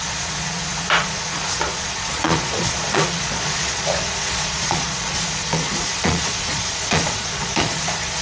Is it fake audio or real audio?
fake